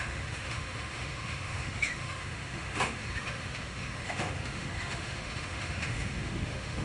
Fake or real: fake